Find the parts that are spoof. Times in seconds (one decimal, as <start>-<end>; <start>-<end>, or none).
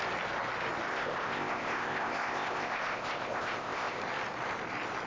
0.9-4.0